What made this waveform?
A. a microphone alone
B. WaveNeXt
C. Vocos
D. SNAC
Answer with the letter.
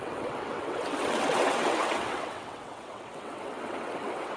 B